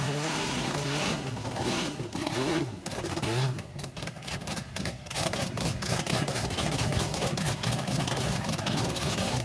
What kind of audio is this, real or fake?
fake